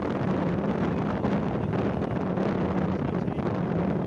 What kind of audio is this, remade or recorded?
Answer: recorded